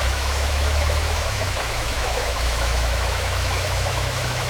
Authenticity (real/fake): fake